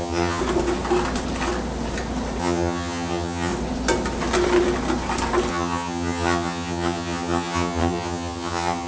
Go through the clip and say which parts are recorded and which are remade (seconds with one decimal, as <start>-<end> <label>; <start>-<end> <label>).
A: 0.0-0.4 remade; 0.4-2.4 recorded; 2.4-3.5 remade; 3.5-5.5 recorded; 5.5-8.9 remade